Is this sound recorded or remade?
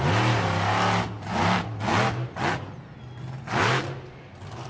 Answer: recorded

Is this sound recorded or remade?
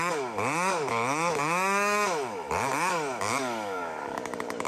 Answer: remade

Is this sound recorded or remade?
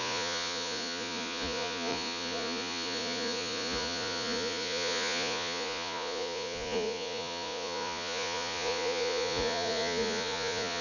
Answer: remade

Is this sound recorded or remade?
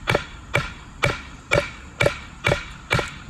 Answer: recorded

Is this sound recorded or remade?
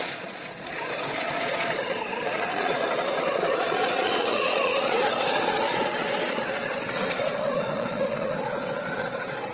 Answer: remade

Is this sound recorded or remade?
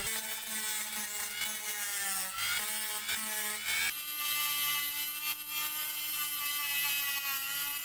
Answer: recorded